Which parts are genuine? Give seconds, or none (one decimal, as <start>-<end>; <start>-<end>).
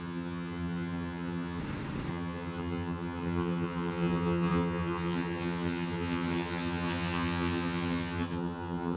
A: 1.6-2.1